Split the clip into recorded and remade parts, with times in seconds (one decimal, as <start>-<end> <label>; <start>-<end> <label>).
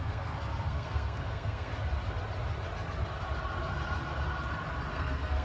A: 0.0-1.7 remade; 1.7-4.9 recorded; 4.9-5.4 remade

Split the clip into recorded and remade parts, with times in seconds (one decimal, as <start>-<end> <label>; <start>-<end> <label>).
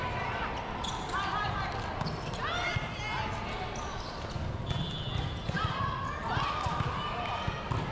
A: 0.0-7.9 recorded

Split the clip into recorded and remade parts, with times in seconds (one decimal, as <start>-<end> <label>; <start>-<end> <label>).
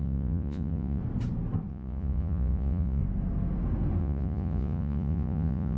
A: 0.0-1.0 remade; 1.0-1.7 recorded; 1.7-3.0 remade; 3.0-4.0 recorded; 4.0-5.8 remade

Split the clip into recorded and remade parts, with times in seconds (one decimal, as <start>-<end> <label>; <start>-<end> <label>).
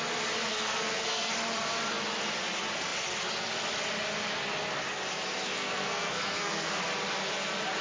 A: 0.0-0.5 recorded; 0.5-1.3 remade; 1.3-5.5 recorded; 5.5-6.8 remade; 6.8-7.8 recorded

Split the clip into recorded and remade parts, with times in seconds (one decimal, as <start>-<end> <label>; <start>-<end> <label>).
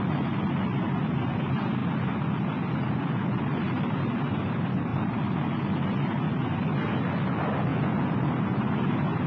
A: 0.0-1.8 remade; 1.8-3.0 recorded; 3.0-7.7 remade; 7.7-8.6 recorded; 8.6-9.3 remade